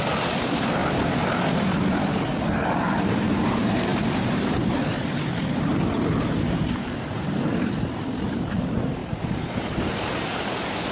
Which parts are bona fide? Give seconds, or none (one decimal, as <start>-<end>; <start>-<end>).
0.8-2.5